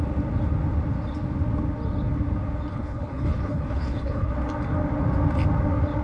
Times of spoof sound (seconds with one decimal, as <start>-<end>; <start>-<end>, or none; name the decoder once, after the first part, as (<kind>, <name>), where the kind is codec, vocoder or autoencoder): 2.7-4.3 (codec, HILCodec)